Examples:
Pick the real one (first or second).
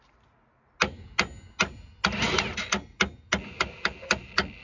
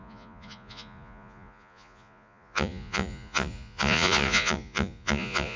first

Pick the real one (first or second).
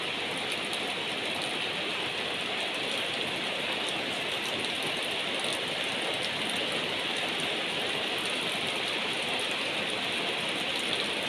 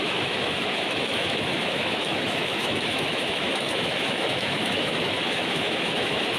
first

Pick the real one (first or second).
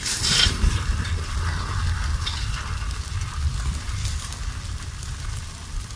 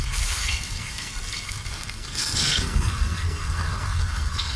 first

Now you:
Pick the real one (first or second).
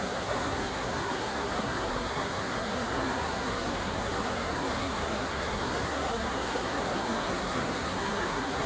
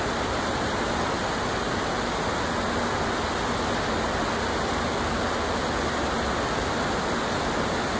second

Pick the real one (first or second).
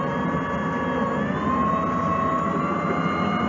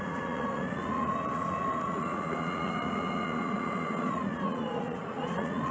first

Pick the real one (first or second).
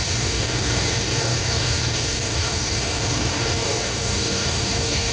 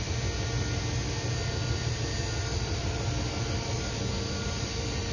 second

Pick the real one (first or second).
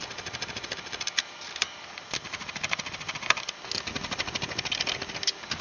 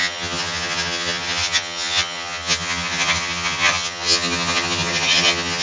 first